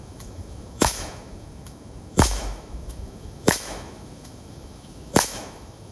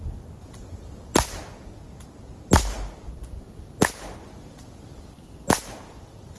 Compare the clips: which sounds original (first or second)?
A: second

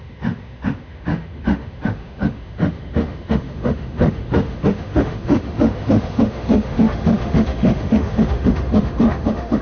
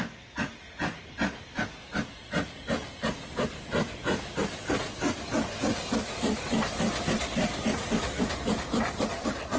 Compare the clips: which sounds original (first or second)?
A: second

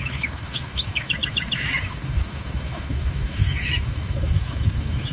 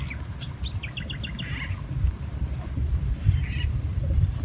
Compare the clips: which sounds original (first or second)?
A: second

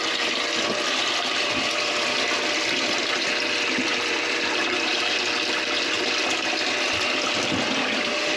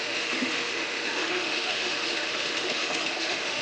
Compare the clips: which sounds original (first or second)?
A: first